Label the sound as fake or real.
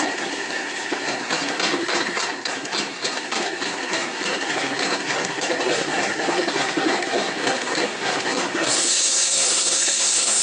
fake